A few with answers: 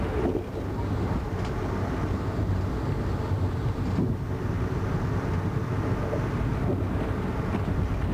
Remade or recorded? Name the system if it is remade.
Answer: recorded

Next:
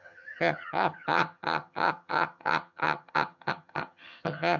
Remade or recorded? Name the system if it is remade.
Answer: remade, vocoder, HiFi-GAN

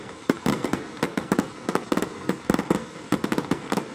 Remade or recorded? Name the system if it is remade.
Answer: remade, codec, SNAC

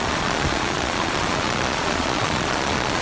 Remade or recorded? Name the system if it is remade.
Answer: remade, vocoder, Vocos